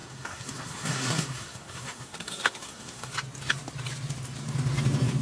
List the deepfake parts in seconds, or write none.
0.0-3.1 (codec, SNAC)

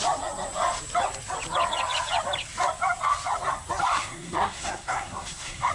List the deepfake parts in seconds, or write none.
3.9-5.7 (codec, SNAC)

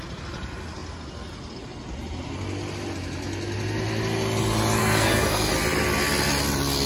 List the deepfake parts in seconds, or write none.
4.8-5.5 (codec, SNAC)

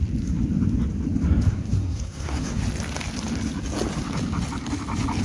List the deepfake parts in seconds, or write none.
1.5-2.6 (codec, SNAC)

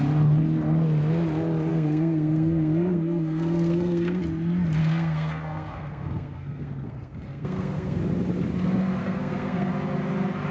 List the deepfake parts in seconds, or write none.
1.7-4.2 (codec, SNAC); 4.8-8.0; 9.0-9.7